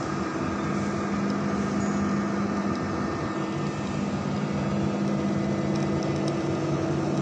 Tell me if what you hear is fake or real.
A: real